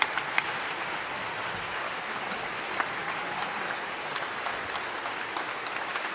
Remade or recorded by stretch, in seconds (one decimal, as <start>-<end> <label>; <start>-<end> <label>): 0.0-6.1 recorded